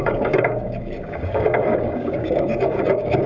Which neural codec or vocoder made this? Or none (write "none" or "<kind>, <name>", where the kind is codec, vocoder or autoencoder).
codec, DAC